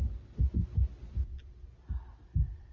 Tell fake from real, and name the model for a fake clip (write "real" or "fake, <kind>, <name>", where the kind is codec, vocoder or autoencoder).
real